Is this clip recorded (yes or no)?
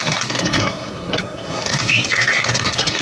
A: no